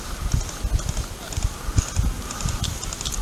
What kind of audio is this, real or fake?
real